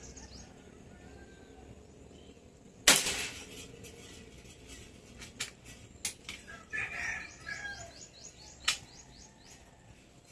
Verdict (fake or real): real